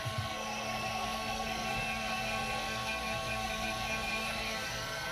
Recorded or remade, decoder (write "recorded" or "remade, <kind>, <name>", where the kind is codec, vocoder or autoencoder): remade, codec, SNAC